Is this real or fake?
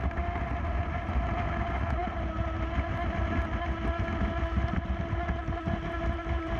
real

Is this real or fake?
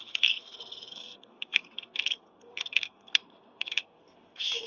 fake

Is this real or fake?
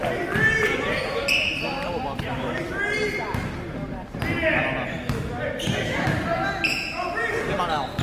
real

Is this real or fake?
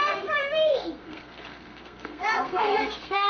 fake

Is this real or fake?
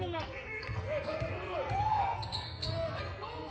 fake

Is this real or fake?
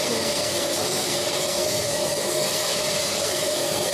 fake